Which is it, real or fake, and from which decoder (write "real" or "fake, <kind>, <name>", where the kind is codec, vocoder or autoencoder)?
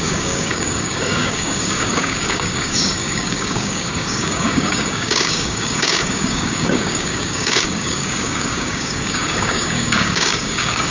fake, codec, DAC